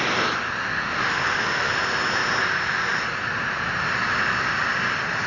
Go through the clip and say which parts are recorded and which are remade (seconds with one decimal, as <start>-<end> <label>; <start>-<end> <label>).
0.0-0.7 recorded; 0.7-1.7 remade; 1.7-5.3 recorded